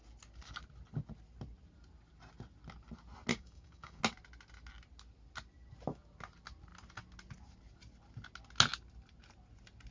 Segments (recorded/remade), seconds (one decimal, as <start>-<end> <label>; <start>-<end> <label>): 0.0-3.3 recorded; 3.3-4.0 remade; 4.0-9.9 recorded